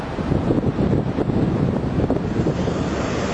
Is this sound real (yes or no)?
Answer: yes